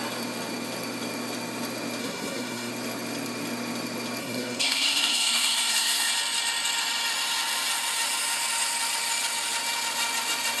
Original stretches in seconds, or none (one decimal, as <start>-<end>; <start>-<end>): 0.0-2.0; 2.7-4.2; 6.1-10.6